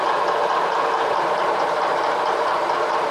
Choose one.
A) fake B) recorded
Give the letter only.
A